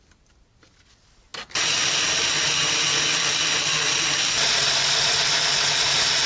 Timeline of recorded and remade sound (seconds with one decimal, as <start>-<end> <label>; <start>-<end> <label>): 0.0-6.3 recorded